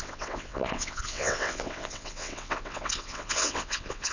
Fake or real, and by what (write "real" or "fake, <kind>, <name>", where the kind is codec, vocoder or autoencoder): fake, vocoder, WaveNeXt